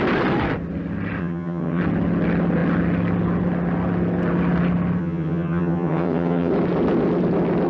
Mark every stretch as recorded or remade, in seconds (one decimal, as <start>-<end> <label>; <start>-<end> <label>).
0.0-1.2 recorded; 1.2-1.8 remade; 1.8-5.0 recorded; 5.0-6.5 remade; 6.5-7.7 recorded